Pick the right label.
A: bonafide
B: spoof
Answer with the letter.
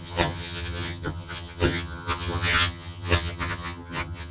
B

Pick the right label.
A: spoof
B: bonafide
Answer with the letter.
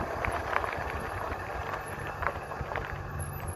B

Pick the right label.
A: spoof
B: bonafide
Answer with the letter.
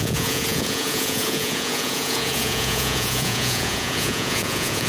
A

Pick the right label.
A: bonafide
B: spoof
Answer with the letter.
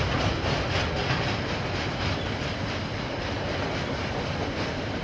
A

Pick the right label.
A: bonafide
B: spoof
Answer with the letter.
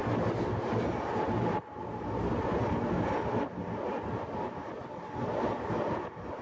A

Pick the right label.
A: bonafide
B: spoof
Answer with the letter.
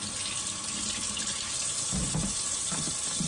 A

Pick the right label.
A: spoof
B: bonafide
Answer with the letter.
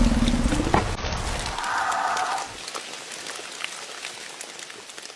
B